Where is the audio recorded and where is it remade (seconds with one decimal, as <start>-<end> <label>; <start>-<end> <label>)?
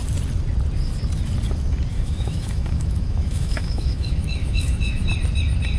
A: 0.0-1.9 recorded; 1.9-5.1 remade; 5.1-5.8 recorded